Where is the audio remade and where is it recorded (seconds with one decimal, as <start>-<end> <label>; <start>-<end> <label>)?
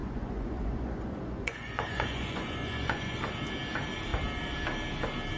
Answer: 0.0-3.2 remade; 3.2-5.4 recorded